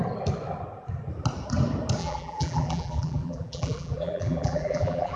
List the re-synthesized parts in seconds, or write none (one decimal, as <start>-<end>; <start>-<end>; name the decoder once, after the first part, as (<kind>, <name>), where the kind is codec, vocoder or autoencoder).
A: 2.0-5.2 (vocoder, BigVGAN v2)